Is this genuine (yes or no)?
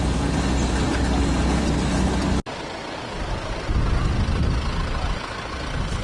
yes